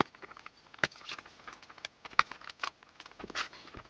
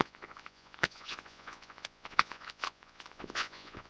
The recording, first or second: first